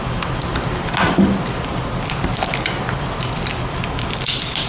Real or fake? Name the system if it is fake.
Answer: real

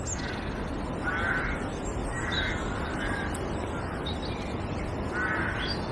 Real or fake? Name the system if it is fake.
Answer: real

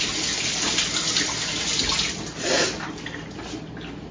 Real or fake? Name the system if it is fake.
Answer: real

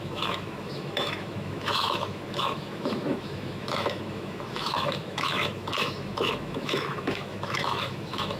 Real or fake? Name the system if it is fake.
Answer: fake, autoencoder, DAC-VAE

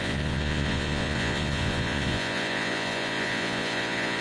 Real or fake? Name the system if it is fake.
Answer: fake, vocoder, Vocos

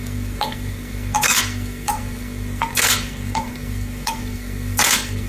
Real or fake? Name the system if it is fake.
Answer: fake, codec, SNAC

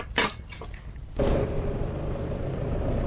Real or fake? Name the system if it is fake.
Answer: real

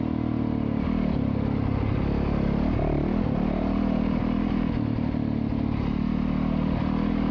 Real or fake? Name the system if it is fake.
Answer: real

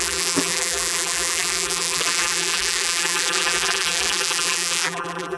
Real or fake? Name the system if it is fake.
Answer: fake, vocoder, BigVGAN v2